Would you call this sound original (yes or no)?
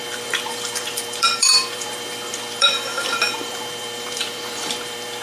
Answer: no